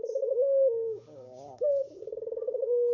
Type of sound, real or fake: fake